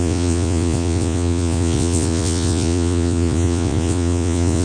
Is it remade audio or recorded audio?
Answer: remade